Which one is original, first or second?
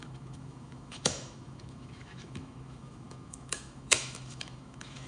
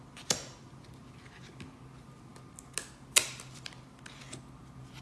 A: second